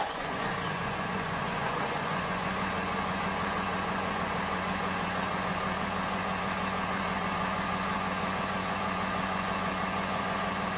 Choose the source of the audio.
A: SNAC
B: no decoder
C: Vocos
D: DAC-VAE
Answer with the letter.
C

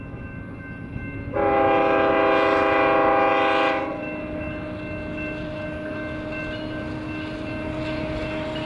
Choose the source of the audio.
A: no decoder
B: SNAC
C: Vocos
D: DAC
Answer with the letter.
A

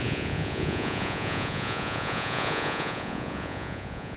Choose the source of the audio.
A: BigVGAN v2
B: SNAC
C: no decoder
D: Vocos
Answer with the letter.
D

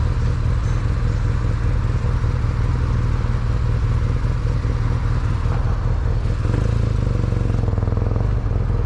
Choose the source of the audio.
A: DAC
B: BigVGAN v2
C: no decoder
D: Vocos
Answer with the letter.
C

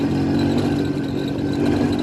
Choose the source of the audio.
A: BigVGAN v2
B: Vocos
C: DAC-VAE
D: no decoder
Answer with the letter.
D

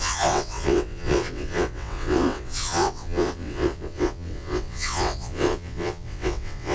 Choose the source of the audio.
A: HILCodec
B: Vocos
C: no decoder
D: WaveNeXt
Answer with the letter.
D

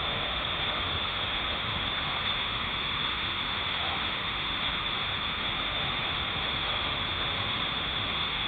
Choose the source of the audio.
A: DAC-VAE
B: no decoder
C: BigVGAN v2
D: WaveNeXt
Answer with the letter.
A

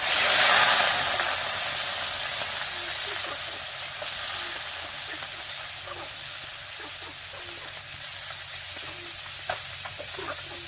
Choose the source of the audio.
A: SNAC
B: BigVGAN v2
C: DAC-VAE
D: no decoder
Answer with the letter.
D